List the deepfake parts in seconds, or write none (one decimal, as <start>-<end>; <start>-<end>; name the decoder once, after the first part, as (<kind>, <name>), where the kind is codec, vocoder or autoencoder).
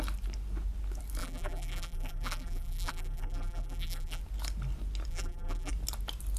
1.2-4.2 (vocoder, BigVGAN v2); 5.1-5.7